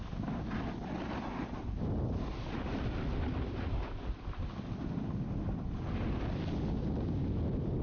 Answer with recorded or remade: recorded